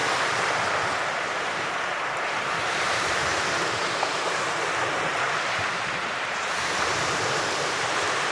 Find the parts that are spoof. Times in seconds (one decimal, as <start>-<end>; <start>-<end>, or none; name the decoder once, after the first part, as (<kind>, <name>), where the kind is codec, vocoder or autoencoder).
1.4-8.3 (vocoder, BigVGAN v2)